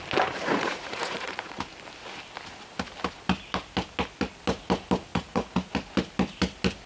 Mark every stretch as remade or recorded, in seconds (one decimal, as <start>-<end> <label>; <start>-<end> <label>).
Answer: 0.0-0.4 recorded; 0.4-1.6 remade; 1.6-5.1 recorded; 5.1-5.7 remade; 5.7-6.9 recorded